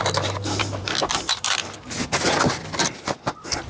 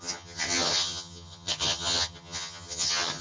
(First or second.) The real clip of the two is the first